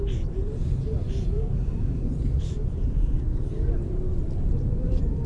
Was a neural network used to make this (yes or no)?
yes